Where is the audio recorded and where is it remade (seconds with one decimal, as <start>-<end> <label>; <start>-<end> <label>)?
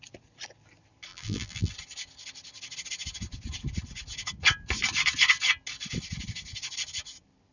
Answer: 0.0-1.1 recorded; 1.1-1.7 remade; 1.7-7.5 recorded